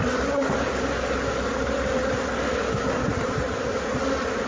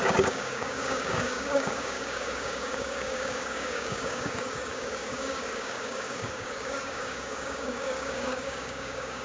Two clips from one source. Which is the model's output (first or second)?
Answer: second